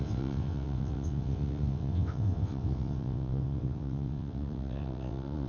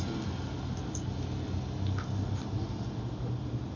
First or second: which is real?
second